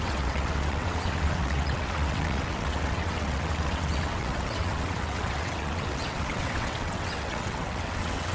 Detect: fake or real fake